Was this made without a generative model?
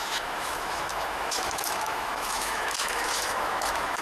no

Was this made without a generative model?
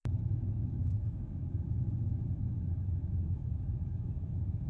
no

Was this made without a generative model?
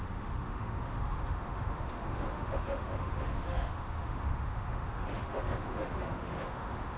no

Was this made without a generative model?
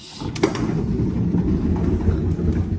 yes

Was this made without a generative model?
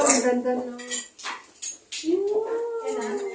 yes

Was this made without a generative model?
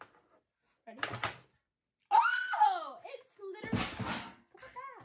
yes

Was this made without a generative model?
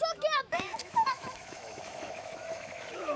no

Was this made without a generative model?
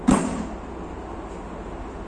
yes